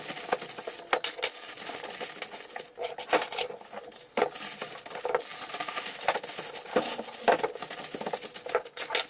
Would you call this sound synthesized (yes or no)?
no